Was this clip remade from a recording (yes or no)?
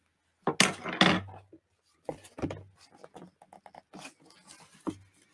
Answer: no